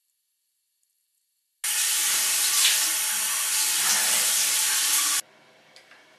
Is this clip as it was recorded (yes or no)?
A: yes